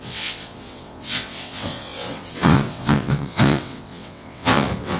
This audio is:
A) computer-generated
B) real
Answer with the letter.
A